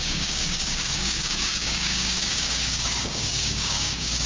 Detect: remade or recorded remade